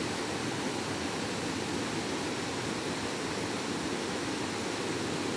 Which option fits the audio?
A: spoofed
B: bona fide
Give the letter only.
B